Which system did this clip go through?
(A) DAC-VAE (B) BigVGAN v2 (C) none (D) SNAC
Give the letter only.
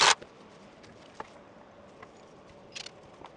C